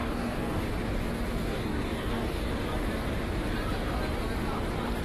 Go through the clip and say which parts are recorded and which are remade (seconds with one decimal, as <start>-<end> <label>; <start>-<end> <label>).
0.0-0.6 remade; 0.6-1.4 recorded; 1.4-2.5 remade; 2.5-5.0 recorded